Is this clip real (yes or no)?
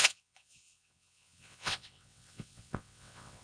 no